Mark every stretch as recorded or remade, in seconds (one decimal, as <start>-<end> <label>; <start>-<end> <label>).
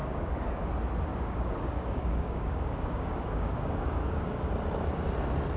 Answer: 0.0-0.6 remade; 0.6-1.1 recorded; 1.1-4.5 remade; 4.5-5.6 recorded